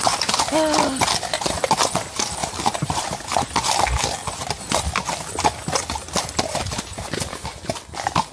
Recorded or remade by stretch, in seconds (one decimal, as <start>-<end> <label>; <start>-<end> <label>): 0.0-2.4 recorded; 2.4-3.4 remade; 3.4-8.3 recorded